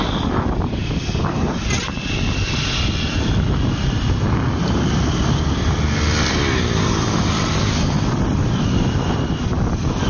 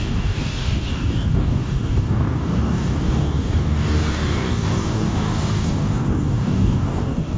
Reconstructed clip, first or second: second